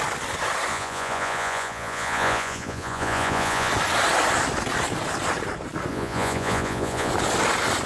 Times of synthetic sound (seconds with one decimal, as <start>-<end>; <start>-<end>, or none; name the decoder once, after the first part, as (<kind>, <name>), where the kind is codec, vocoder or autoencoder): 0.7-3.7 (vocoder, Vocos); 5.9-7.1